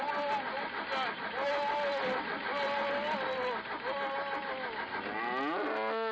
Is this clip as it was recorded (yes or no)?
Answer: yes